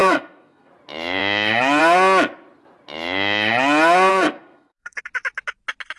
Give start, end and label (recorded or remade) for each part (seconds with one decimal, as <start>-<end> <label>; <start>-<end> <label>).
0.0-0.7 remade; 0.7-4.1 recorded; 4.1-5.0 remade; 5.0-6.0 recorded